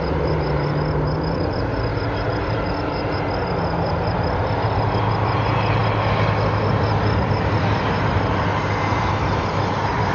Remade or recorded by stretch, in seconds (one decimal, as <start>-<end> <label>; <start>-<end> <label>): 0.0-10.1 recorded